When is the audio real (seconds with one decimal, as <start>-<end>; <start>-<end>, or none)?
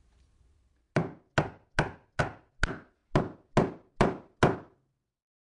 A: 0.0-5.6